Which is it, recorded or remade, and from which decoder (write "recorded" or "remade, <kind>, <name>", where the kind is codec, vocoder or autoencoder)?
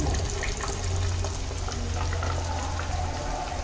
recorded